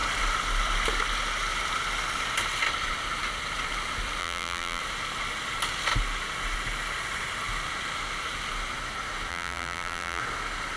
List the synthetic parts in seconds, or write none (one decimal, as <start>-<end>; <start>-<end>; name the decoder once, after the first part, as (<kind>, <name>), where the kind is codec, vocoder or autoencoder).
4.2-4.8 (vocoder, BigVGAN v2); 9.3-10.2